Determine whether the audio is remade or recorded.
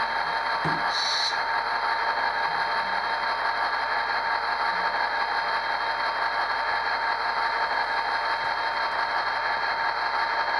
recorded